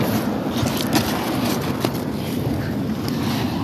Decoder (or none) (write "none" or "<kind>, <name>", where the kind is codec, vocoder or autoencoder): vocoder, BigVGAN v2